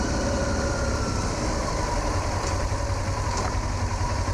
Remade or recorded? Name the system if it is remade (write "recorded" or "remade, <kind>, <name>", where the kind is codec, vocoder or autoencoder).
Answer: remade, vocoder, BigVGAN v2